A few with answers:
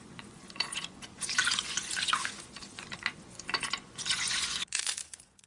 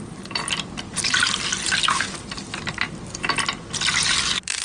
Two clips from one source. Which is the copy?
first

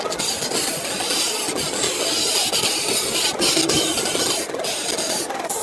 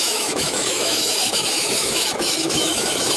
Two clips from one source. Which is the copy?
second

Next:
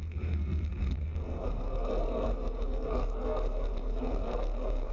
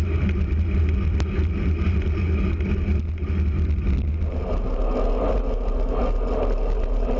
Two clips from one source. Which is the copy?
first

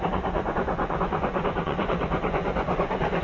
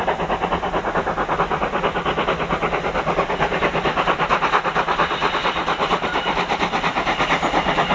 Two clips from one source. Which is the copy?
first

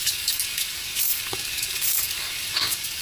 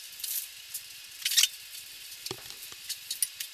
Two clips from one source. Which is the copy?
first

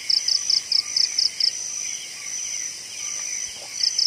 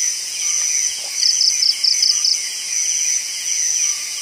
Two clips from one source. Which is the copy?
second